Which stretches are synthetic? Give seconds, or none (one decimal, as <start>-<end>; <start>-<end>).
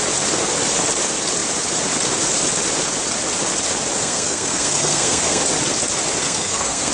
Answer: 4.0-5.4; 6.2-6.9